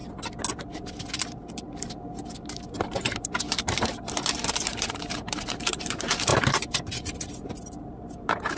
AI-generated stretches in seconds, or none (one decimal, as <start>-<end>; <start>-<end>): 0.7-8.6